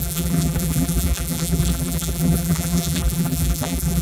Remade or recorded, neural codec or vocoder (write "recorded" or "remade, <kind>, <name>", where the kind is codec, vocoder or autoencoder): remade, vocoder, BigVGAN v2